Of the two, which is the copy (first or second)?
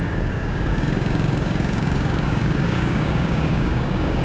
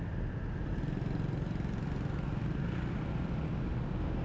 first